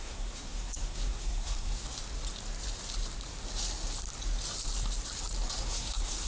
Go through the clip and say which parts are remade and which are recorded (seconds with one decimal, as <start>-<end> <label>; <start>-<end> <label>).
0.0-1.8 remade; 1.8-5.6 recorded; 5.6-6.3 remade